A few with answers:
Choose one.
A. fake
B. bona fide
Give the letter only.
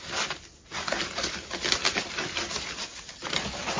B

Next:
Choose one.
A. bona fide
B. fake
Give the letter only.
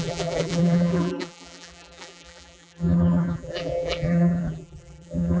B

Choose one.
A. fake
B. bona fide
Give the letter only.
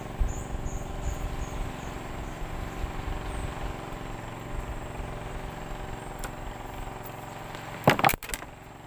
B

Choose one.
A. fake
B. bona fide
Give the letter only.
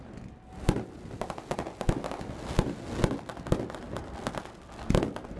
B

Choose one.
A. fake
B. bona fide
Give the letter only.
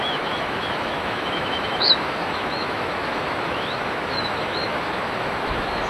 A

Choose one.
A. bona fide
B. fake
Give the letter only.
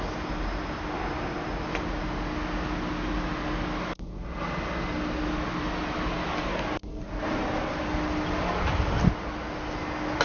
A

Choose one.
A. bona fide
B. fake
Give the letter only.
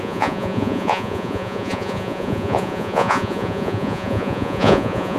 B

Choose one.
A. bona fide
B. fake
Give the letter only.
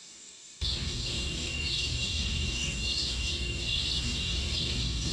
B